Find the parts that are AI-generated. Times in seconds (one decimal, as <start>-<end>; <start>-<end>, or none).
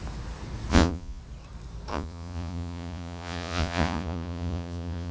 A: 0.7-1.2; 1.9-5.1